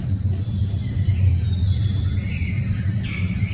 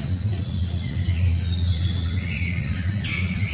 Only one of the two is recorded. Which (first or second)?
first